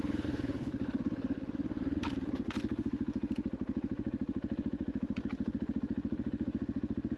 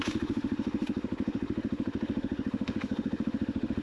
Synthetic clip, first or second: second